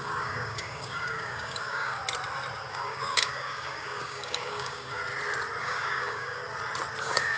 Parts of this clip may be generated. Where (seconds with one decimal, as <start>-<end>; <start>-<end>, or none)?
0.0-2.0; 2.7-5.0; 5.6-6.4; 7.0-7.4